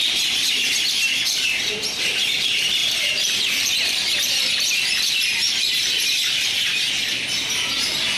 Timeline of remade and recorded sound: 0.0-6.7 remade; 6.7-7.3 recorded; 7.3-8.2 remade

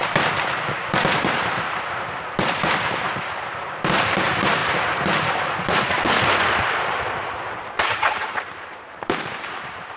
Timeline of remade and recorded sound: 0.0-0.9 recorded; 0.9-10.0 remade

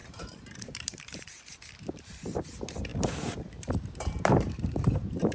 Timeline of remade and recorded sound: 0.0-5.3 remade

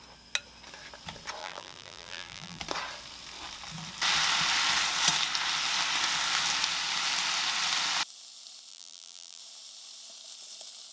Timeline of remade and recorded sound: 0.0-1.4 recorded; 1.4-2.6 remade; 2.6-8.7 recorded; 8.7-9.4 remade; 9.4-10.9 recorded

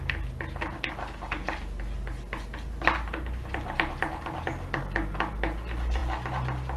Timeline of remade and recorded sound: 0.0-6.8 recorded

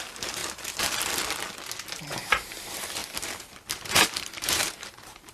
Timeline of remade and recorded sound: 0.0-0.4 remade; 0.4-2.0 recorded; 2.0-3.0 remade; 3.0-3.7 recorded; 3.7-5.3 remade

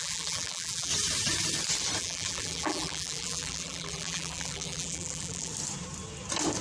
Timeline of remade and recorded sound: 0.0-0.9 remade; 0.9-2.0 recorded; 2.0-5.5 remade; 5.5-6.6 recorded

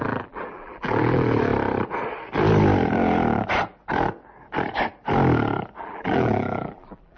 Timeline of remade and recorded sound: 0.0-1.5 remade; 1.5-5.8 recorded; 5.8-7.2 remade